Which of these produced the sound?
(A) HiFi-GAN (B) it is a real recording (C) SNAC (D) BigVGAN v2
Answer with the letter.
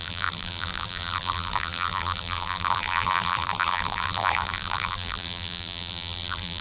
D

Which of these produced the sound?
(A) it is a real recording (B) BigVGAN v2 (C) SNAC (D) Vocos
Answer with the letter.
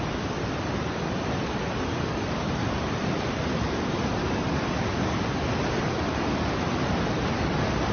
B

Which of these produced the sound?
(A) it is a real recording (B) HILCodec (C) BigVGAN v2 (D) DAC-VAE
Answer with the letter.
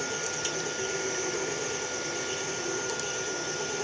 A